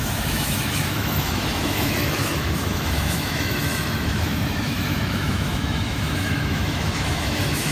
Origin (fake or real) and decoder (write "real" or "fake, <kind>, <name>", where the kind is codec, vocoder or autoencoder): fake, autoencoder, DAC-VAE